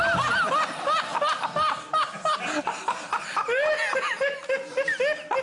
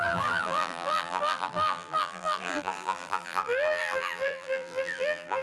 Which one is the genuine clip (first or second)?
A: first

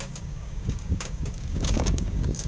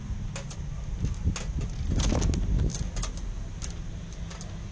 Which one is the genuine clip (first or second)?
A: second